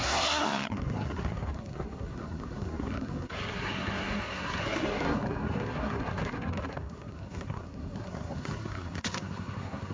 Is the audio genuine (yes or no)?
no